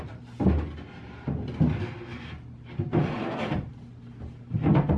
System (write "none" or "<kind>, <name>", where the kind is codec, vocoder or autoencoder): none